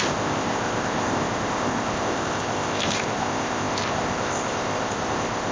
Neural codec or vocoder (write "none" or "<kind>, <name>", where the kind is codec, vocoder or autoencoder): codec, ZipCodec